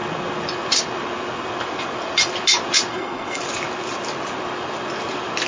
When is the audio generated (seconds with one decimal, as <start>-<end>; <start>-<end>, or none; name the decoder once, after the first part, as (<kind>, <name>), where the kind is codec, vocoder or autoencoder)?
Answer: 2.9-3.4 (codec, SNAC)